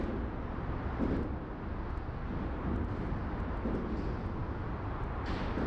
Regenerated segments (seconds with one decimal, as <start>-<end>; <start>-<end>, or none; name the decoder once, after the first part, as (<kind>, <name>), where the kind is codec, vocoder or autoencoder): none